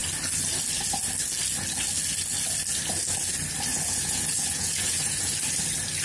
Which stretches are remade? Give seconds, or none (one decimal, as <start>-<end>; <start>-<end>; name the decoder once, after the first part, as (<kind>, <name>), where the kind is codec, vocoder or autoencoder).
3.7-5.3 (vocoder, Vocos)